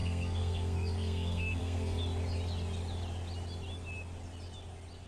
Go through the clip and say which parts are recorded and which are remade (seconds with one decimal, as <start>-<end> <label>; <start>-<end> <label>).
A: 0.0-2.0 remade; 2.0-5.1 recorded